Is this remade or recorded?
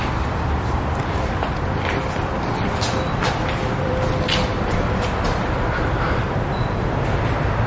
remade